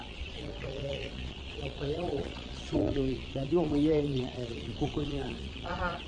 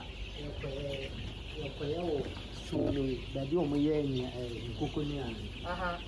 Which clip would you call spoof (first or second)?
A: first